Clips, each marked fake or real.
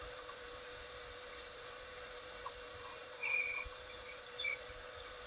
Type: fake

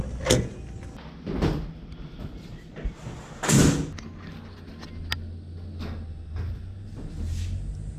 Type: real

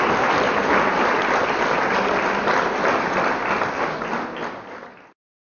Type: real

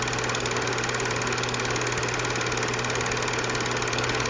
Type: real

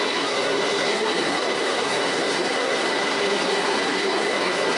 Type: fake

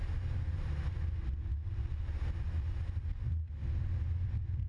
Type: real